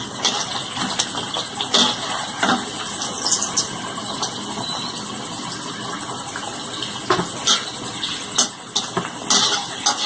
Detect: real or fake real